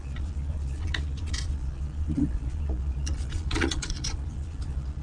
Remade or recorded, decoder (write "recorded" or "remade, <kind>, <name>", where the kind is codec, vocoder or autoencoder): remade, vocoder, Vocos